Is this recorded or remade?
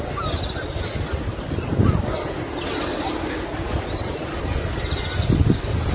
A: recorded